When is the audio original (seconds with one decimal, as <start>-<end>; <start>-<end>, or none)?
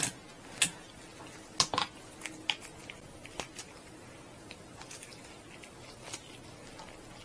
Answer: 0.0-7.2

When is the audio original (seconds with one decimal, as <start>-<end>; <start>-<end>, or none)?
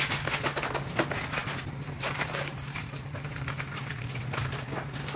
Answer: 0.0-1.4; 3.8-5.2